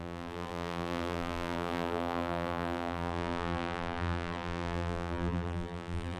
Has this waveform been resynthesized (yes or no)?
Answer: yes